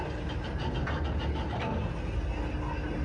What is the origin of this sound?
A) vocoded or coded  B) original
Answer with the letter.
B